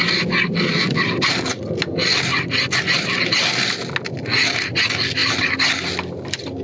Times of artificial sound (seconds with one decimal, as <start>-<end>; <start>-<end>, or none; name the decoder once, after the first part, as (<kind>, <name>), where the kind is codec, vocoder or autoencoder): none